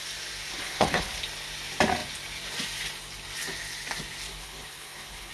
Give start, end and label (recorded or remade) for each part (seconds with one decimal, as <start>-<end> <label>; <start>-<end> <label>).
0.0-0.5 recorded; 0.5-1.2 remade; 1.2-4.4 recorded; 4.4-5.3 remade